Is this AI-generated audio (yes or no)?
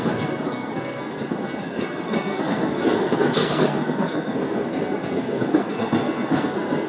yes